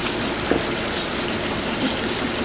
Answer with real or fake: real